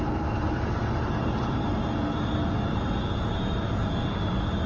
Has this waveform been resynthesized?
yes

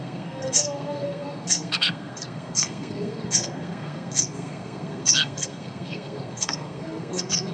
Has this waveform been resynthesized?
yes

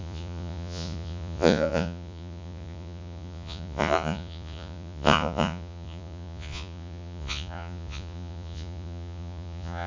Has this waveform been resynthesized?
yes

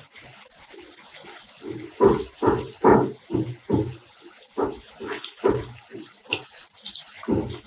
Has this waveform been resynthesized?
no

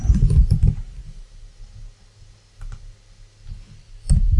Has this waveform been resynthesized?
no